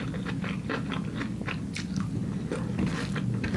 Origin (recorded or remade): recorded